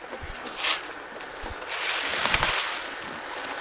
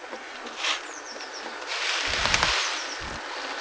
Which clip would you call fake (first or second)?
first